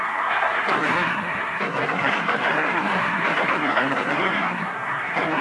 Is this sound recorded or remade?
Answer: remade